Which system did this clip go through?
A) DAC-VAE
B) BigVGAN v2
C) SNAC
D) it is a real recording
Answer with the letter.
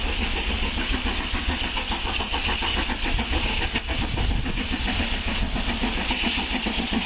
D